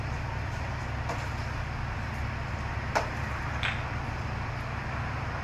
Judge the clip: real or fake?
real